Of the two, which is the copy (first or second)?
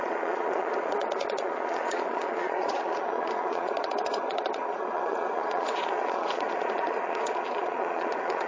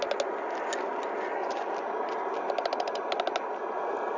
first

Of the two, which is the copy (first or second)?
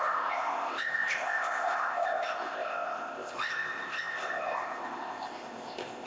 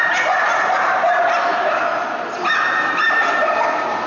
first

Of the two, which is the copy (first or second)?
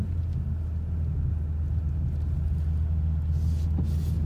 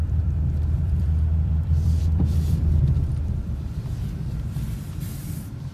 second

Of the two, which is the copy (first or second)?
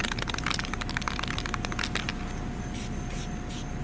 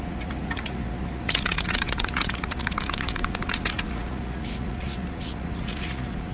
second